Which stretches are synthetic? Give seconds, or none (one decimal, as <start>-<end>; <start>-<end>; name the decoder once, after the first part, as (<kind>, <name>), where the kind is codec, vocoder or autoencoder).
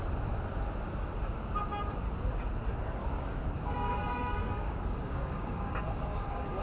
3.0-6.6 (codec, DAC)